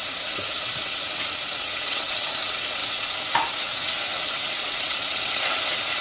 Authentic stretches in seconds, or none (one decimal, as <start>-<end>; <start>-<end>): none